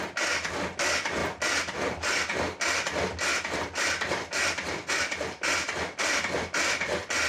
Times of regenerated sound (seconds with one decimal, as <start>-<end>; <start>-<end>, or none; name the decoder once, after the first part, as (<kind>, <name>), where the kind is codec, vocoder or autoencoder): none